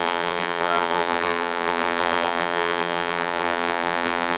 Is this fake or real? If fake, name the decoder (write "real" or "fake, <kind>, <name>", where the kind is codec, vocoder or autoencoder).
fake, vocoder, BigVGAN v2